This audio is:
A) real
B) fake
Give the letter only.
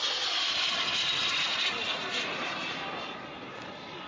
A